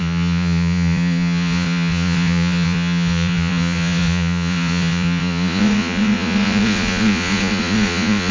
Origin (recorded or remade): remade